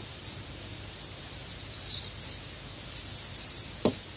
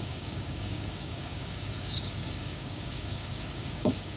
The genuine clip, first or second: first